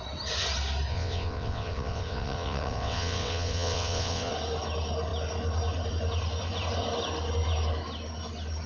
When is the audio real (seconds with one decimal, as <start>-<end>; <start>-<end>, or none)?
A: 0.0-0.9; 4.3-8.7